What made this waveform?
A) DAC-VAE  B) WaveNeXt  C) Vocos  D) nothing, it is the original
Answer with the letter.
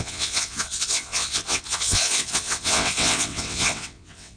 B